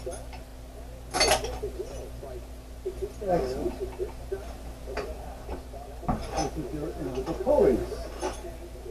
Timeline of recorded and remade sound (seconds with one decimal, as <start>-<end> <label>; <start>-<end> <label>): 0.0-8.9 recorded